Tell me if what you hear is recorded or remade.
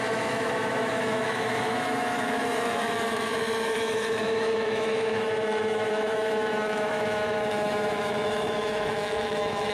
remade